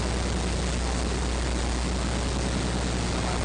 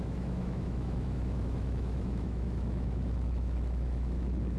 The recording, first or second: first